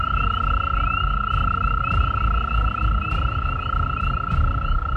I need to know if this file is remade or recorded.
recorded